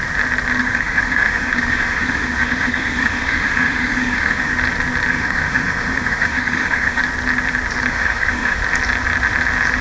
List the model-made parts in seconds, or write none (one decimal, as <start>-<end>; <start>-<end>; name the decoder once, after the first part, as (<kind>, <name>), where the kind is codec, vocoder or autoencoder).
0.6-4.5 (autoencoder, DAC-VAE); 5.1-7.0; 7.9-8.6